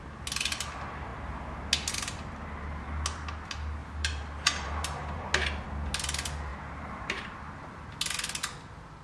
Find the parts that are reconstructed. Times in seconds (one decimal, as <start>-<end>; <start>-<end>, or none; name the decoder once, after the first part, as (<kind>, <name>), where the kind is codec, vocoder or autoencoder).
3.8-5.3 (vocoder, BigVGAN v2); 6.5-7.5